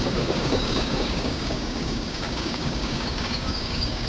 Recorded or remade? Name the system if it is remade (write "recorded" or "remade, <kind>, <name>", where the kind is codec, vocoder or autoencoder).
remade, codec, DAC